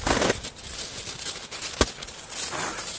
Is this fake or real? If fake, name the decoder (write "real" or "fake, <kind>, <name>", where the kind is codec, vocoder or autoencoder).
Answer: real